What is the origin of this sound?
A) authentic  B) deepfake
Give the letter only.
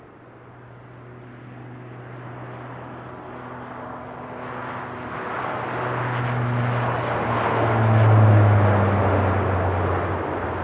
A